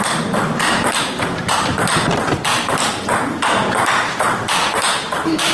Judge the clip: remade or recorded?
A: remade